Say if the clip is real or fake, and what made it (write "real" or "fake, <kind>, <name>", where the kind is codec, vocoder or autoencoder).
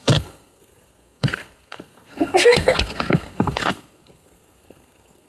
fake, codec, SNAC